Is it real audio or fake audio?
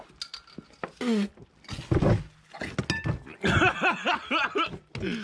real